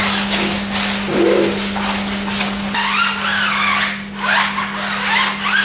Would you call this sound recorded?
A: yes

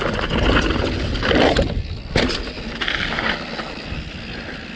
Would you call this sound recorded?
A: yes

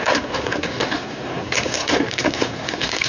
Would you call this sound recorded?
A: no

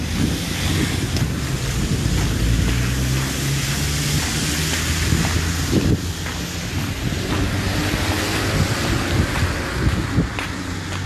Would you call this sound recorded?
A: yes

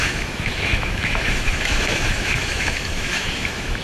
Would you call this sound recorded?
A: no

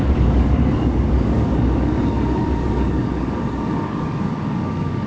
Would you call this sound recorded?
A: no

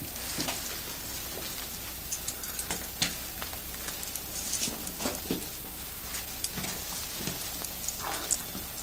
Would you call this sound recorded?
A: yes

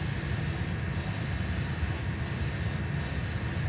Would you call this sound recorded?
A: yes